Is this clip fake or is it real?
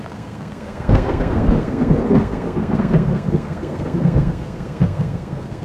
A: fake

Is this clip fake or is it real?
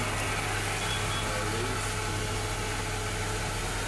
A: real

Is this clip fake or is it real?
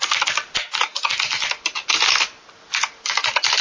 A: real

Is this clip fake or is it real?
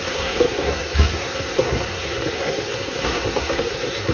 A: fake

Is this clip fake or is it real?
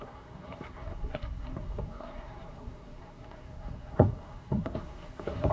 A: fake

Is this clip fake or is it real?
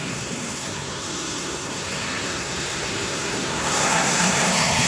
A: fake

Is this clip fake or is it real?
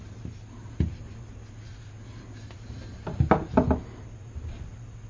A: real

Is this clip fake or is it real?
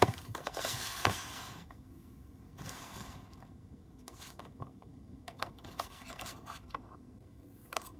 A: fake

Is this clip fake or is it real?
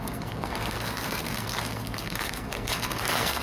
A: fake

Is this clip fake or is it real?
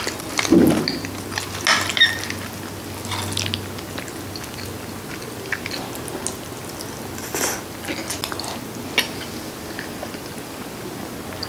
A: real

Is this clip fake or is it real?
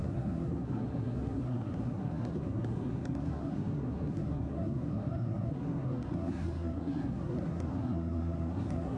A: fake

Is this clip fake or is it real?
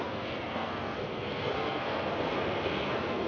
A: fake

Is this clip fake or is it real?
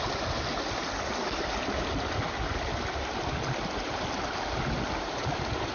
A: real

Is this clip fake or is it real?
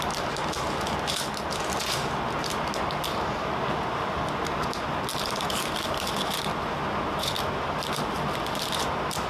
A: real